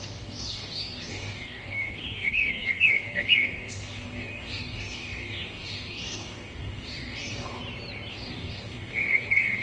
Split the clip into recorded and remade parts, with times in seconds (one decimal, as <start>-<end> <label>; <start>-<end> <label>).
0.0-7.6 remade; 7.6-8.1 recorded; 8.1-9.6 remade